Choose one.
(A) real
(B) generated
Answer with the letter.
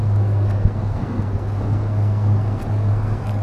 B